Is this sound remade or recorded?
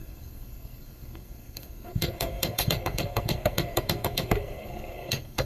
remade